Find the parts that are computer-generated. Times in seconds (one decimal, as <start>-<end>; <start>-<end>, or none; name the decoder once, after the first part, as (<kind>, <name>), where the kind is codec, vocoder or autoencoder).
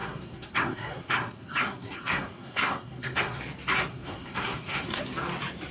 0.0-3.4 (codec, SNAC); 3.9-5.0